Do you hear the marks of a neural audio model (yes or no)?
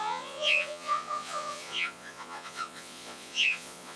yes